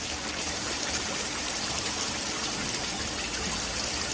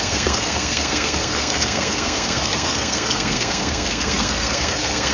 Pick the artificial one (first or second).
second